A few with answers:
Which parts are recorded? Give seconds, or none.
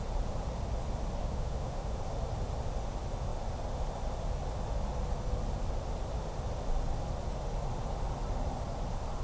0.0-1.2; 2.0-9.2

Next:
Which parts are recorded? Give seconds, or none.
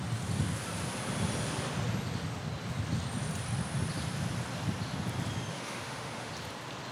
0.0-5.5; 6.3-6.9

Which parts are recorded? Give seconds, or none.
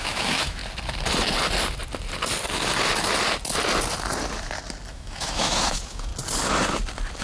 0.6-4.9; 6.1-7.2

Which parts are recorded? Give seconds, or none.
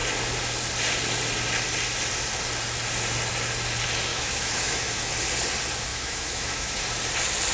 0.0-4.1; 5.1-5.9; 6.8-7.5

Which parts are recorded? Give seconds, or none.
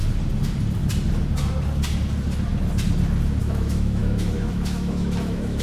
0.0-3.4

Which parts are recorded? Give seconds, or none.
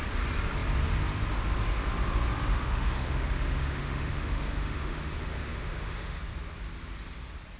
0.0-2.5; 6.2-7.6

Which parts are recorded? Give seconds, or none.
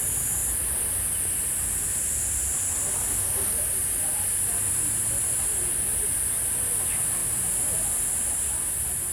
0.0-9.1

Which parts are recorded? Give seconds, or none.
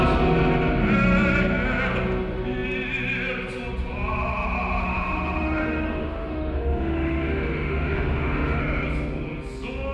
0.0-4.8; 8.6-9.9